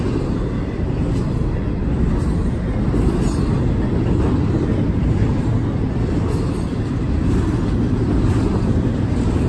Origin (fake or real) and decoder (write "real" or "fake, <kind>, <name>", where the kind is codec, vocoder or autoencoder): real